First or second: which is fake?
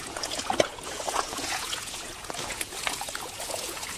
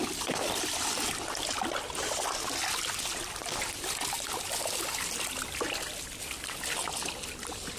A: first